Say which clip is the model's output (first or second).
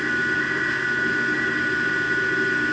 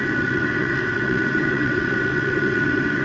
second